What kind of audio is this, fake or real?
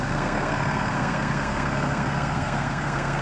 fake